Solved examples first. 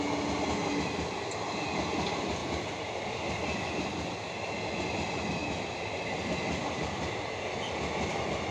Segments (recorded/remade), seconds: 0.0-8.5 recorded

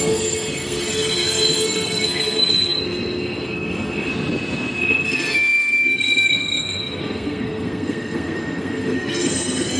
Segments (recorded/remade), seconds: 0.0-4.1 remade; 4.1-4.8 recorded; 4.8-9.8 remade

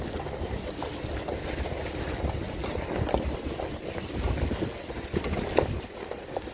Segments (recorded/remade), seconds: 0.0-6.5 recorded

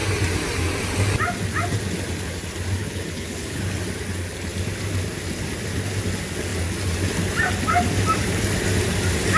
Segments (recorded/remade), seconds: 0.0-2.8 recorded; 2.8-3.6 remade; 3.6-9.4 recorded

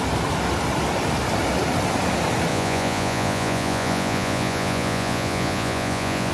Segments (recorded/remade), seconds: 0.0-2.5 recorded; 2.5-6.3 remade

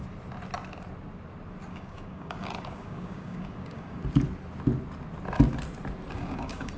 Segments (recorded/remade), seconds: 0.0-1.7 recorded; 1.7-4.0 remade; 4.0-6.1 recorded; 6.1-6.8 remade